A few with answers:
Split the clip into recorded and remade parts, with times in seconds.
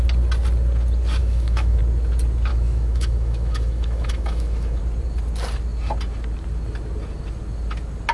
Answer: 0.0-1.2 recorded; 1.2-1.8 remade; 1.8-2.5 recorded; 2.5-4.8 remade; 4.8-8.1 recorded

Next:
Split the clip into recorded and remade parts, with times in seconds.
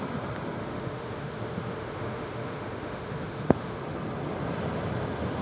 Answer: 0.0-0.6 recorded; 0.6-3.8 remade; 3.8-5.4 recorded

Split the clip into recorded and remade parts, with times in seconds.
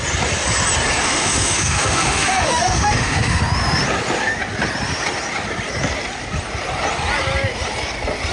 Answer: 0.0-1.0 recorded; 1.0-3.4 remade; 3.4-8.3 recorded